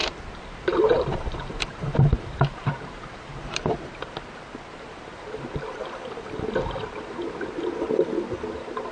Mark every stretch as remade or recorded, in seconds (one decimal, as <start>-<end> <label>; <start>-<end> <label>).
0.0-3.6 remade; 3.6-8.9 recorded